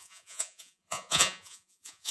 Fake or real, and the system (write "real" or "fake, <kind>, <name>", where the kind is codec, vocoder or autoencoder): fake, vocoder, Vocos